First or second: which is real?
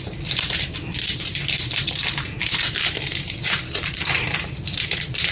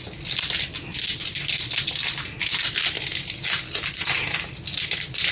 second